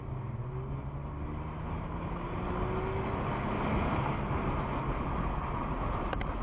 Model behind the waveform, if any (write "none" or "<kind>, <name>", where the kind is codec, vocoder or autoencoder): none